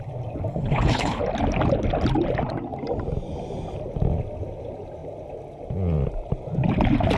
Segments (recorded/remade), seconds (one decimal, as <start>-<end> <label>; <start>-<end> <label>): 0.0-0.5 recorded; 0.5-1.2 remade; 1.2-7.2 recorded